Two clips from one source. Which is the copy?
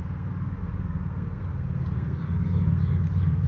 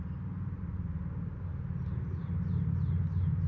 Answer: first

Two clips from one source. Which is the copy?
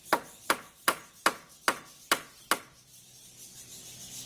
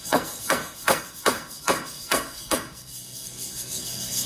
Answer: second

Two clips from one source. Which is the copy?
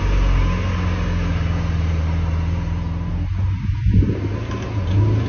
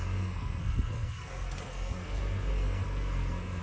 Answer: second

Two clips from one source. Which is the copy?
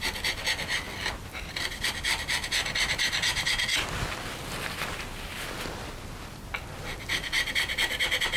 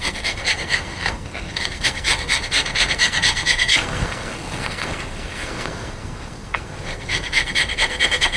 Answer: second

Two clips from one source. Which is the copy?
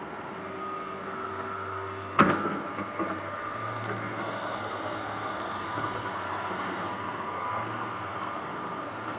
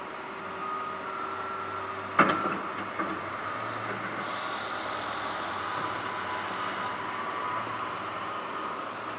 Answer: first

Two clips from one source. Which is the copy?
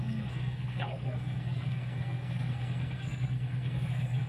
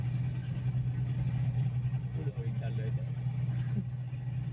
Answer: first